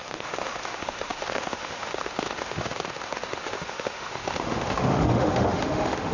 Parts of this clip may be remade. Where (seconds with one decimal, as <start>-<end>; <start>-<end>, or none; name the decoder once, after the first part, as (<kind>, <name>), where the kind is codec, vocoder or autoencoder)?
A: 0.0-6.1 (autoencoder, DAC-VAE)